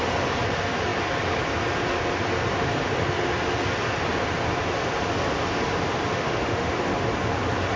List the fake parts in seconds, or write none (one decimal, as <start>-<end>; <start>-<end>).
6.1-6.7